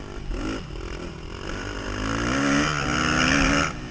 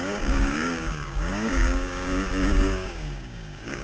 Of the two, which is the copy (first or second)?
second